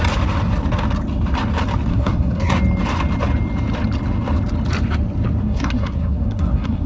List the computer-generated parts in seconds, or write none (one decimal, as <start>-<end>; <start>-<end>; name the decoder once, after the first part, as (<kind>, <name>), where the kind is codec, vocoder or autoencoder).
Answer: 1.9-2.6 (codec, SNAC); 5.4-6.9